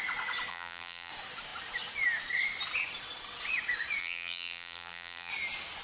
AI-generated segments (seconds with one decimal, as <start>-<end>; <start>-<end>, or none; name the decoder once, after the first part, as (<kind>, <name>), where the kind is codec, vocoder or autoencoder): 0.5-1.1 (vocoder, BigVGAN v2); 4.0-5.3